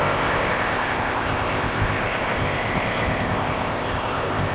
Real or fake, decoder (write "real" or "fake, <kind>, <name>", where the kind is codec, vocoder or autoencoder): fake, codec, ZipCodec